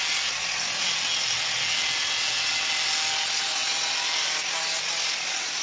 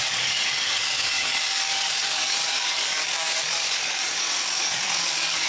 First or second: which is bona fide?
first